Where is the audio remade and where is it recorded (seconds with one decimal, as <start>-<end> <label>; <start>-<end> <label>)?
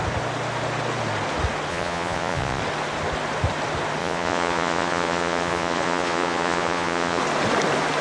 0.0-1.7 recorded; 1.7-2.6 remade; 2.6-4.0 recorded; 4.0-7.2 remade; 7.2-8.0 recorded